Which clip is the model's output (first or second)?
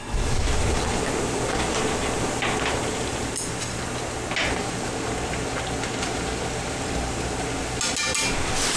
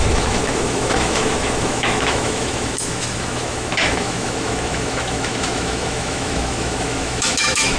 second